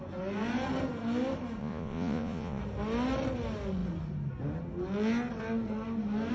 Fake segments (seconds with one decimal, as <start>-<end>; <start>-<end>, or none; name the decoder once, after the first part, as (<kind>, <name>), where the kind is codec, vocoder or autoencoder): 1.6-2.6 (vocoder, Vocos)